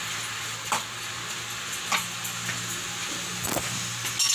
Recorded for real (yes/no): yes